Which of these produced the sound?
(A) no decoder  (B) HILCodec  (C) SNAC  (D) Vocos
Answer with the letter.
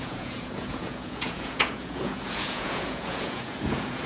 D